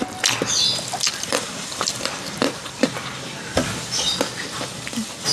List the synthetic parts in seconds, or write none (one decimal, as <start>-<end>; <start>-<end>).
0.0-5.3